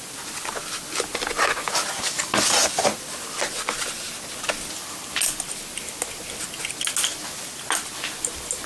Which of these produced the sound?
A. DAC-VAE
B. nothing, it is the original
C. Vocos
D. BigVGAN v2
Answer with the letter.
B